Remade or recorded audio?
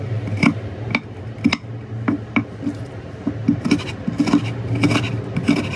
recorded